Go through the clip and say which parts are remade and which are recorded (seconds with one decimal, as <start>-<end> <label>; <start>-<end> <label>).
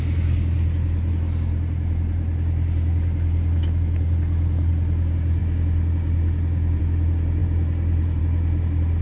0.0-5.4 remade; 5.4-6.8 recorded; 6.8-9.0 remade